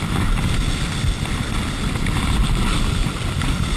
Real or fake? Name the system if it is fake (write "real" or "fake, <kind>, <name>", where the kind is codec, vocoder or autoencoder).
real